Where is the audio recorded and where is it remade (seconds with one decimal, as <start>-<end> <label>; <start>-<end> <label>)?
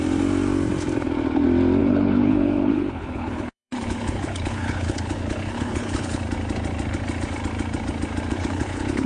0.0-1.8 recorded; 1.8-6.2 remade; 6.2-8.3 recorded; 8.3-9.1 remade